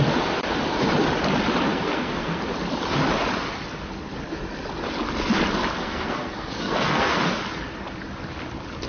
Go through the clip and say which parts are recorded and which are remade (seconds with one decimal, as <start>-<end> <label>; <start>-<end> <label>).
0.0-1.7 recorded; 1.7-2.4 remade; 2.4-5.8 recorded; 5.8-7.2 remade; 7.2-8.9 recorded